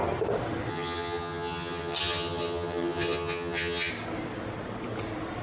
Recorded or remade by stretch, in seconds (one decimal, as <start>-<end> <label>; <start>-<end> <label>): 0.0-0.7 recorded; 0.7-3.9 remade; 3.9-5.4 recorded